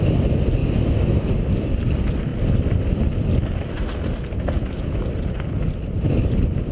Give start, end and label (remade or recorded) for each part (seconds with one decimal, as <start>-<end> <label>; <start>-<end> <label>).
0.0-6.7 recorded